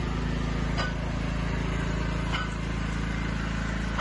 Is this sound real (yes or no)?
yes